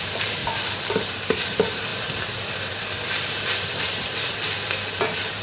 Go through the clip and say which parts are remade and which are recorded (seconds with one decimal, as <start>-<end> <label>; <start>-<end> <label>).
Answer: 0.0-0.4 remade; 0.4-1.0 recorded; 1.0-5.4 remade